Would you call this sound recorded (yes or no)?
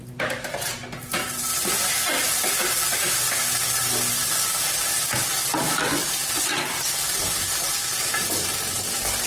yes